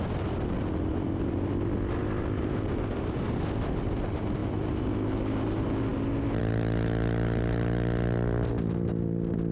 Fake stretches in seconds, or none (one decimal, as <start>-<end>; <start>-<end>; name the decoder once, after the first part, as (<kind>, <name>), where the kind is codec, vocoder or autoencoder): none